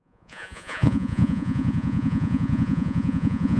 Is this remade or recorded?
remade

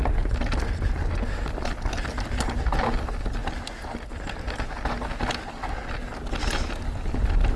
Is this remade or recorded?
recorded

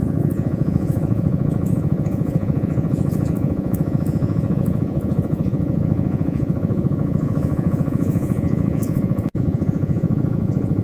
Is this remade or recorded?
remade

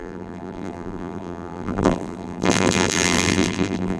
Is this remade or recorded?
remade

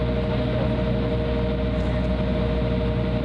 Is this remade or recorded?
recorded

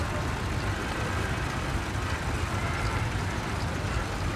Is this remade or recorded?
remade